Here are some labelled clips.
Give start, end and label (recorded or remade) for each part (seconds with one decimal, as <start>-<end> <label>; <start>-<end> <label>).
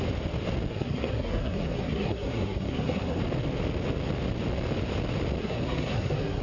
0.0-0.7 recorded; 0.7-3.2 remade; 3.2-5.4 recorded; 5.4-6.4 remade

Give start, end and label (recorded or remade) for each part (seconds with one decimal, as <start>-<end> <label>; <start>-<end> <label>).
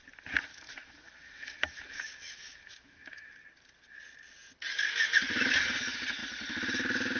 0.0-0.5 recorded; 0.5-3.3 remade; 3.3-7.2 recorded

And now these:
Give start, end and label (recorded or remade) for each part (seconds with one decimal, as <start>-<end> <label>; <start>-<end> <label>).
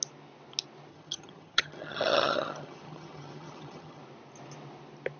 0.0-0.9 recorded; 0.9-4.0 remade; 4.0-5.2 recorded